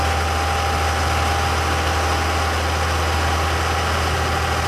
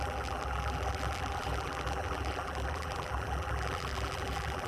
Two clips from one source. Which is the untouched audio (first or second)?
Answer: first